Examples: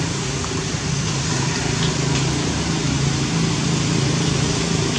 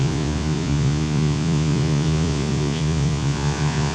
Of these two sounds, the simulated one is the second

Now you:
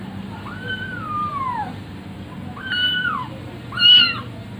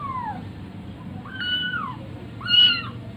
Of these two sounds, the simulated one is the second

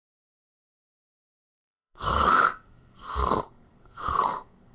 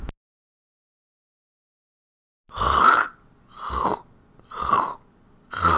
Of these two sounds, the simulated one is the first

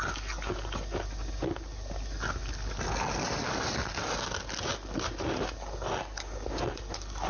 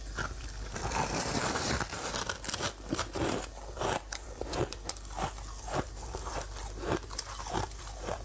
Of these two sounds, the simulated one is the second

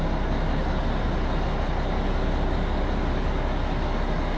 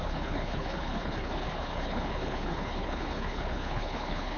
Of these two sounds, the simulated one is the second